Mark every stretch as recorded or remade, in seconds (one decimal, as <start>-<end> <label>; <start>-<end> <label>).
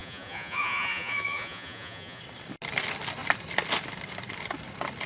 0.0-2.2 remade; 2.2-5.1 recorded